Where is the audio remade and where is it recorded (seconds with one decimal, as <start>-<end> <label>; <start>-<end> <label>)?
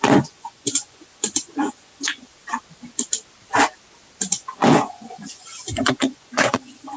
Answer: 0.0-2.3 remade; 2.3-4.3 recorded; 4.3-7.0 remade